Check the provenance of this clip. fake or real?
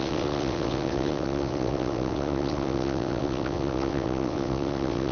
fake